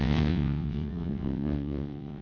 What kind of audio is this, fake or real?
fake